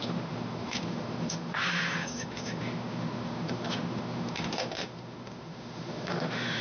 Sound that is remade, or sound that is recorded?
remade